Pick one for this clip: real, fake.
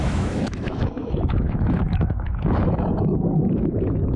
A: fake